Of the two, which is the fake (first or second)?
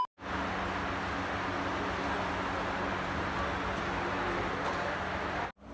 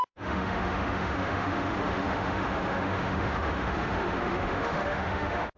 second